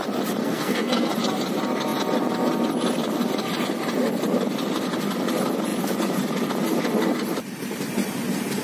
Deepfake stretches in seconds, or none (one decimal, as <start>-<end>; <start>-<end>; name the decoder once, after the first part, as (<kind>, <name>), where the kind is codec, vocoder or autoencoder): 0.4-1.1 (codec, SNAC)